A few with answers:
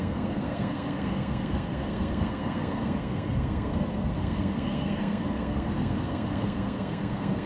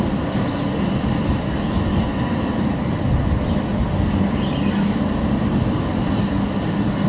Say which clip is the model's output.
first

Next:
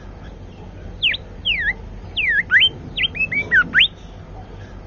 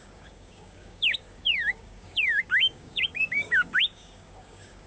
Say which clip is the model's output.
second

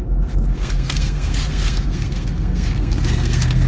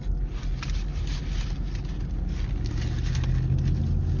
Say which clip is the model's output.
first